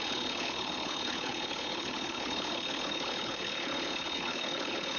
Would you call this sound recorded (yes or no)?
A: no